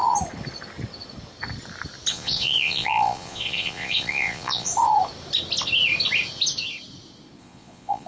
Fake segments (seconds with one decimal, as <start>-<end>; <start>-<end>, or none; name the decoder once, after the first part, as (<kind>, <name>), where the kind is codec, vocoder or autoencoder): 2.1-4.7 (vocoder, Vocos); 7.4-8.1